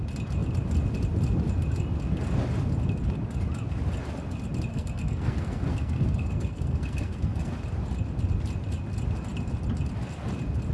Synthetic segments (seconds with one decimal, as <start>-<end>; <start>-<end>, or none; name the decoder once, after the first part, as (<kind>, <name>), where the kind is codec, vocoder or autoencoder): 4.7-7.5 (codec, SNAC)